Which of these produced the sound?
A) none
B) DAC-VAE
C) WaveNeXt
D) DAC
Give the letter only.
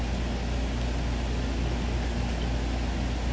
A